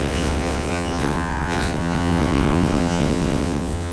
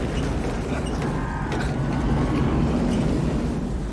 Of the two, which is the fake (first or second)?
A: first